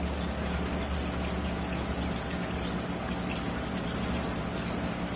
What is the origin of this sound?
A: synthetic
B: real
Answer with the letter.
B